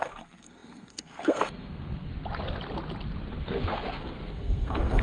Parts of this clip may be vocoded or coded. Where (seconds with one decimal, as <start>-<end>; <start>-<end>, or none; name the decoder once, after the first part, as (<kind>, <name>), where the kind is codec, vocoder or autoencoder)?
0.0-2.1 (codec, SNAC); 3.3-5.0